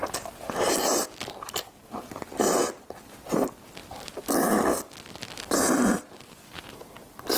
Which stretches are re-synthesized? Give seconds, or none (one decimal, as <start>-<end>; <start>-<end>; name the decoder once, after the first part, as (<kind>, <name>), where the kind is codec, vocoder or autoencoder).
none